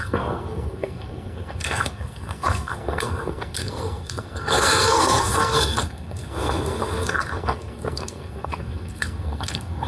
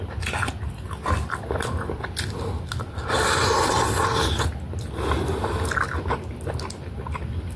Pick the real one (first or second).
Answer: second